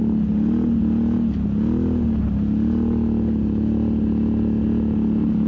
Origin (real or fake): real